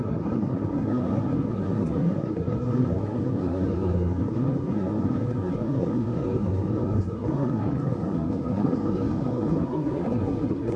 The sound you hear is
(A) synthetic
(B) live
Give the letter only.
A